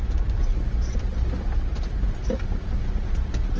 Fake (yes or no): no